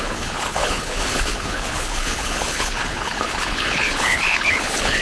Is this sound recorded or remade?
remade